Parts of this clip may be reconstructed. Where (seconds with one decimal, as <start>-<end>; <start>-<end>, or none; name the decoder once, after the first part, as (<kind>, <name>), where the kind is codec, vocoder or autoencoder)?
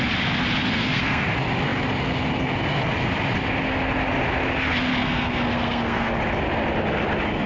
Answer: 0.7-1.2 (codec, SNAC); 5.0-6.1